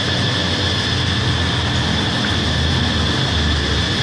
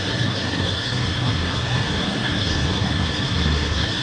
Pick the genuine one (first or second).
first